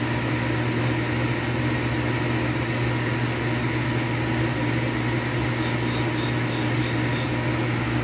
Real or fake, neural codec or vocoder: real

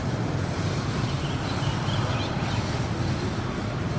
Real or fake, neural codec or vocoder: real